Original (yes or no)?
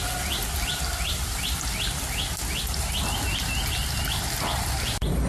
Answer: yes